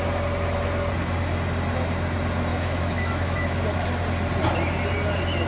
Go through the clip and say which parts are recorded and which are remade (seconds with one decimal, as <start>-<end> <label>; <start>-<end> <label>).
0.0-2.5 recorded; 2.5-3.6 remade; 3.6-5.5 recorded